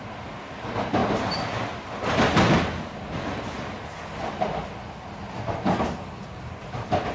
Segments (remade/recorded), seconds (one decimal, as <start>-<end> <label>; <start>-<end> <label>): 0.0-7.1 recorded